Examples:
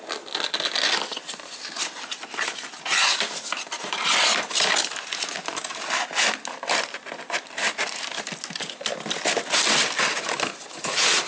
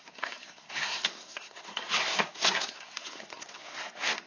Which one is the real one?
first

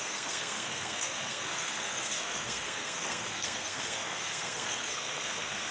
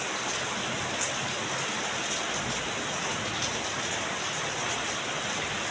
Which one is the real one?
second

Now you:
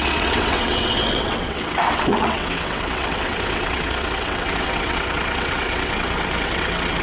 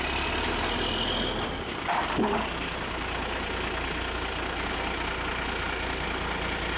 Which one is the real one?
second